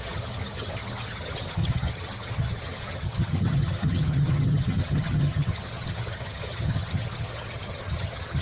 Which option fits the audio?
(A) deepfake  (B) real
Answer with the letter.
A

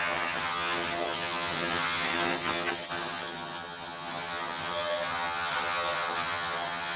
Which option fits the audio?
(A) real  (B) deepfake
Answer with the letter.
B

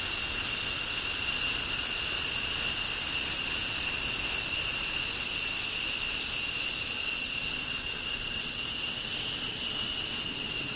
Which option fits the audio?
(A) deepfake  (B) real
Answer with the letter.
B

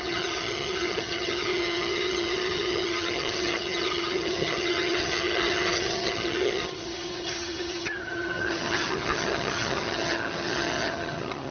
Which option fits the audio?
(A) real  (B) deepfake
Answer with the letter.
B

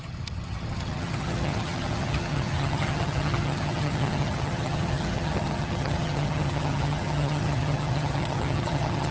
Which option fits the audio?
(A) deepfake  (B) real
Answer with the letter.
A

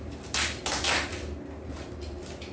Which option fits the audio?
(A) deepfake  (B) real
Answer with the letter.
B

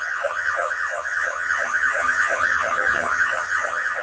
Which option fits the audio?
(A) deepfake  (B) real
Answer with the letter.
A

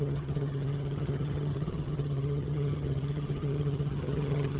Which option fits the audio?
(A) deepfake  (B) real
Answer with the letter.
A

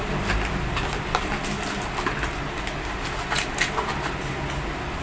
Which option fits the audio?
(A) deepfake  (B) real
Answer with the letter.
B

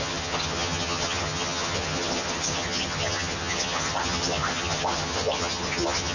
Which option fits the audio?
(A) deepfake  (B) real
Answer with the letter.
A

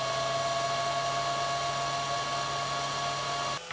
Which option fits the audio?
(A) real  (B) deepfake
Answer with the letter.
A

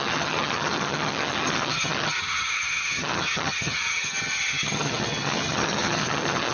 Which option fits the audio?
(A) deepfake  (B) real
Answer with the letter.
A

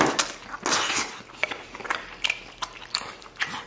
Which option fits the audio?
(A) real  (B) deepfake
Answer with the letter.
A